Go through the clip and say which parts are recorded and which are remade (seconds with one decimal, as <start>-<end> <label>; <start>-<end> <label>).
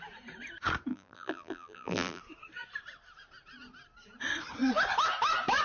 0.0-0.9 recorded; 0.9-2.2 remade; 2.2-5.6 recorded